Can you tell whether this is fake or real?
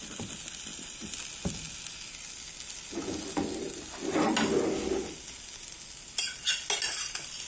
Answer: real